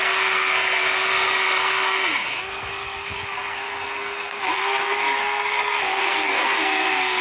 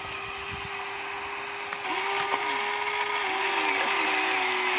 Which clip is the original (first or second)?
second